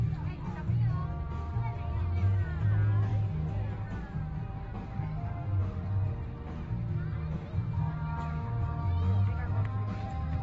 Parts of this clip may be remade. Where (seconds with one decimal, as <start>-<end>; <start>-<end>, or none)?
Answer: none